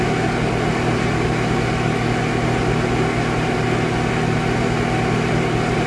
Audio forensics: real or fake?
real